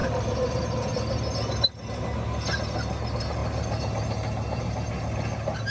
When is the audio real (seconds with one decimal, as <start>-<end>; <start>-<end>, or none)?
0.0-5.7